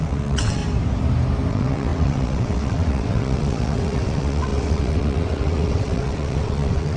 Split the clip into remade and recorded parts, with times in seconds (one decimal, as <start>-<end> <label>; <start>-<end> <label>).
0.0-0.6 remade; 0.6-1.5 recorded; 1.5-7.0 remade